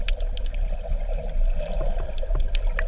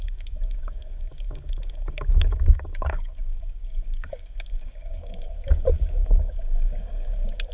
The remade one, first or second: second